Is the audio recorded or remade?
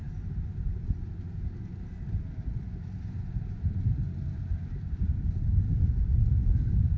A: remade